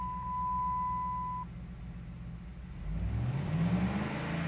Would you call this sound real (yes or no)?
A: yes